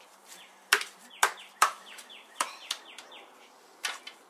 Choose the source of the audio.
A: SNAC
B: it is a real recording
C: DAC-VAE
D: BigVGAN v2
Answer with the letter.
D